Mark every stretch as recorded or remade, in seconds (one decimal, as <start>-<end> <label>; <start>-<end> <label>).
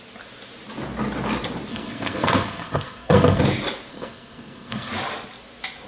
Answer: 0.0-1.7 recorded; 1.7-3.4 remade; 3.4-3.9 recorded; 3.9-4.9 remade; 4.9-5.9 recorded